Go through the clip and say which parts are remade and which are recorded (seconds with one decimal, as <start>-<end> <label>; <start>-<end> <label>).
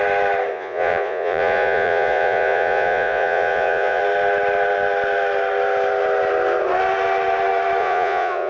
0.0-0.5 recorded; 0.5-4.0 remade; 4.0-7.8 recorded; 7.8-8.5 remade